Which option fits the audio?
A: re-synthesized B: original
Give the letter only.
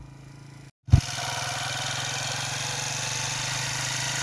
B